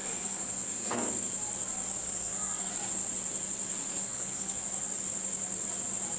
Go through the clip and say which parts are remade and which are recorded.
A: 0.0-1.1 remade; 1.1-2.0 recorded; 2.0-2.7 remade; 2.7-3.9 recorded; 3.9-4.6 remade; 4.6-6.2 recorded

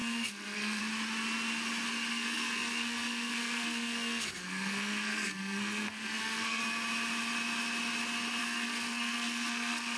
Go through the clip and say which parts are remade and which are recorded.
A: 0.0-0.8 remade; 0.8-2.1 recorded; 2.1-6.6 remade; 6.6-8.4 recorded; 8.4-10.0 remade

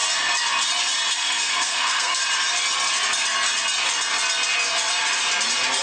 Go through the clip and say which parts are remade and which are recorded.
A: 0.0-1.1 recorded; 1.1-2.2 remade; 2.2-5.8 recorded

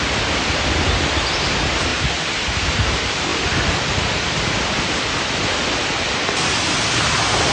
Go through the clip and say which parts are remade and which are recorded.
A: 0.0-7.5 recorded

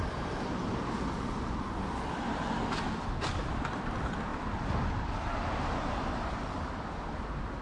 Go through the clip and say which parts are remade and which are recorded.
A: 0.0-7.6 recorded

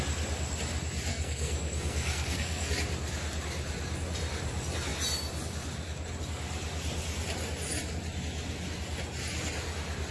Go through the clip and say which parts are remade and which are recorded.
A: 0.0-1.1 recorded; 1.1-2.7 remade; 2.7-10.1 recorded

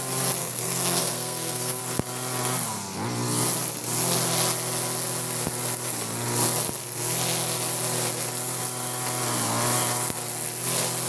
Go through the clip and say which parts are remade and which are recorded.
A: 0.0-0.4 recorded; 0.4-1.8 remade; 1.8-11.1 recorded